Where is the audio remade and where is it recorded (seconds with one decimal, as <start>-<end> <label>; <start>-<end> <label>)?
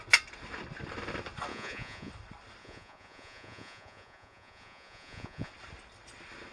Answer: 0.0-1.5 recorded; 1.5-2.1 remade; 2.1-2.6 recorded; 2.6-5.5 remade; 5.5-6.5 recorded